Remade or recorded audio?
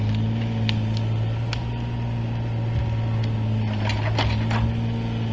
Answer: recorded